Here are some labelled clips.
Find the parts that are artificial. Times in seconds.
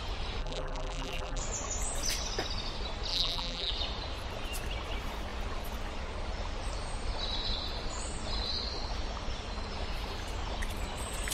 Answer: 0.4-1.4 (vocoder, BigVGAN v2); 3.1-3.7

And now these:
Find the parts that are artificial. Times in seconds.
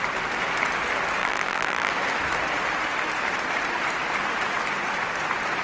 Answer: 1.2-1.9 (vocoder, BigVGAN v2)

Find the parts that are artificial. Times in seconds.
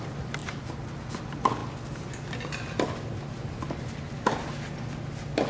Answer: none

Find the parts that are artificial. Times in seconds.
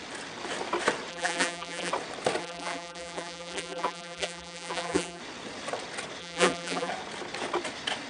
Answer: 1.1-1.9 (vocoder, BigVGAN v2); 2.4-5.2; 6.2-6.9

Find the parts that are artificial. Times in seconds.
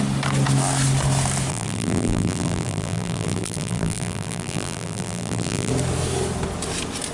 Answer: 1.5-5.7 (vocoder, BigVGAN v2)